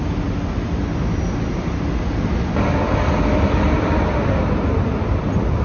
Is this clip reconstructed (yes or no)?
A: no